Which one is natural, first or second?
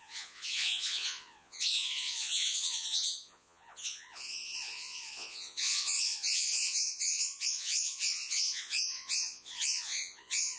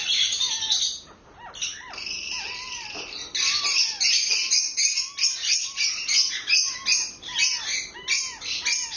second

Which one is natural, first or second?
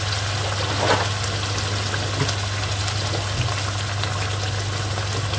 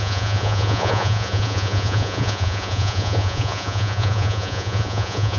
first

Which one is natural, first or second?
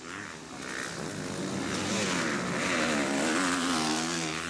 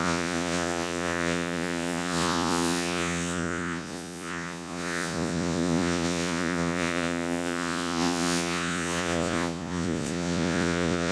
first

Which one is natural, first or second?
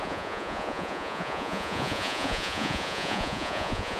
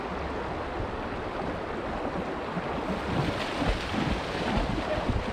second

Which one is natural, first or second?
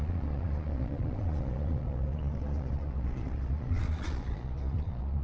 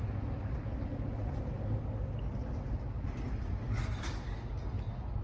second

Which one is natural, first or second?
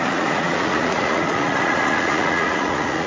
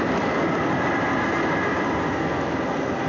second